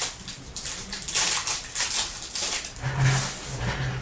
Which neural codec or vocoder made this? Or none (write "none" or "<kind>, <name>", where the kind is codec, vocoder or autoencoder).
none